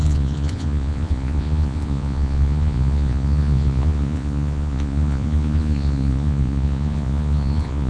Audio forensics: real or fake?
fake